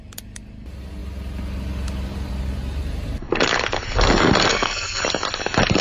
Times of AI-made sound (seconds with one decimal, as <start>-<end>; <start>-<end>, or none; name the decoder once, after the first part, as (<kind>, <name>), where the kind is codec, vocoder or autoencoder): 4.5-5.0 (codec, SNAC)